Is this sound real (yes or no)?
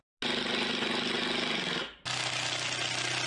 yes